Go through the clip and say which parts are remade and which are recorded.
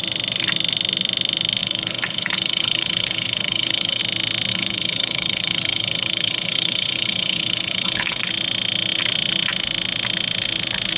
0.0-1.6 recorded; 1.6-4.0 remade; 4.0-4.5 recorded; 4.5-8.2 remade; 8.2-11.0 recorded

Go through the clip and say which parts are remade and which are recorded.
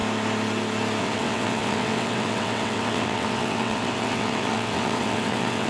0.0-1.0 recorded; 1.0-5.7 remade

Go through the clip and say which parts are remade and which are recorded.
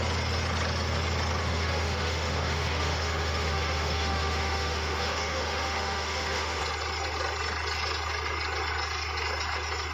0.0-1.4 recorded; 1.4-6.6 remade; 6.6-9.9 recorded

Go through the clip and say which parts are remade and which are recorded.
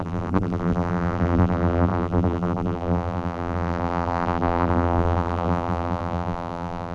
0.0-6.9 remade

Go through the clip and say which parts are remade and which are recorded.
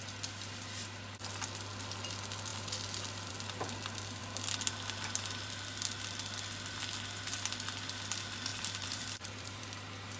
0.0-8.5 recorded; 8.5-9.6 remade; 9.6-10.2 recorded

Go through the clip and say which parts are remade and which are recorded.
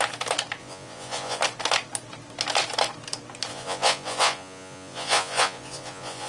0.0-0.6 recorded; 0.6-1.4 remade; 1.4-3.5 recorded; 3.5-6.3 remade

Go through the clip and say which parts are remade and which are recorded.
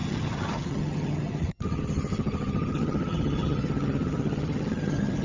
0.0-5.2 remade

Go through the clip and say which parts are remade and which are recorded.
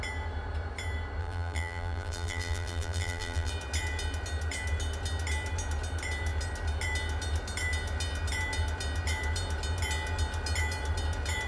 0.0-1.2 recorded; 1.2-3.5 remade; 3.5-11.5 recorded